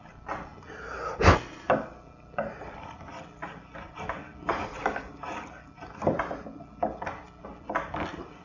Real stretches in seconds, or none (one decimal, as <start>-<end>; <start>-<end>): 0.0-8.4